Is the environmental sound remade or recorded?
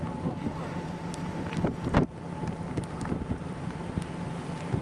remade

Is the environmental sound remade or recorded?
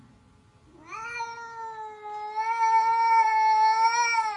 recorded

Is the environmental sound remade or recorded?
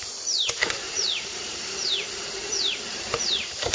remade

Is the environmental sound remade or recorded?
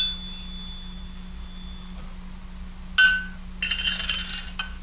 recorded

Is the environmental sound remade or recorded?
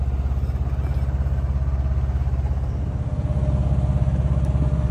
recorded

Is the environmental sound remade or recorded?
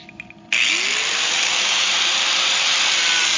recorded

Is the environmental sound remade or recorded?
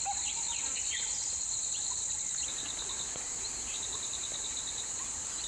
recorded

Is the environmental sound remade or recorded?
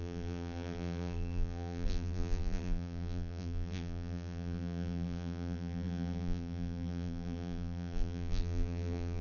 remade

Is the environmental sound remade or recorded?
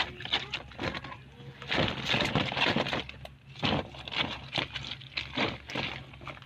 recorded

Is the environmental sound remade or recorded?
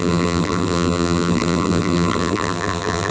remade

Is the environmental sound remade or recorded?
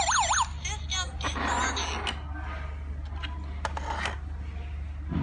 recorded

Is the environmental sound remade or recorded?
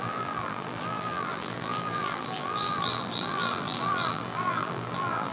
remade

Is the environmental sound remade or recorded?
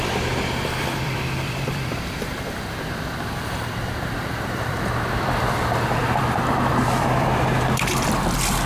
remade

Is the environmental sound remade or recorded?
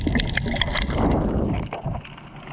recorded